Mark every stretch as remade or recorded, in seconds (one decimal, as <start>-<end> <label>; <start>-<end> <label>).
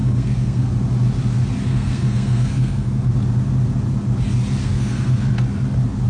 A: 0.0-0.7 remade; 0.7-1.7 recorded; 1.7-3.1 remade; 3.1-4.6 recorded; 4.6-5.3 remade; 5.3-6.1 recorded